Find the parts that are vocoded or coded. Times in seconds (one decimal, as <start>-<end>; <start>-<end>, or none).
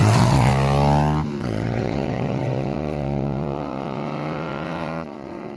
0.0-0.5; 1.4-5.6